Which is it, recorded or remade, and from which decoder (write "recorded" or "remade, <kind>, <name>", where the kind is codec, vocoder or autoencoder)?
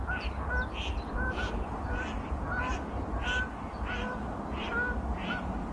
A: recorded